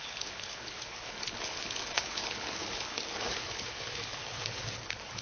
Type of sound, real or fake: fake